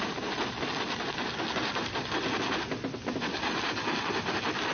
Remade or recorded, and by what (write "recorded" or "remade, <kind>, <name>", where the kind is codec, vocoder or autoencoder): recorded